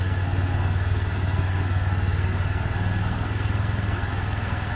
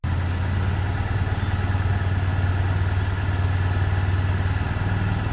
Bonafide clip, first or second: second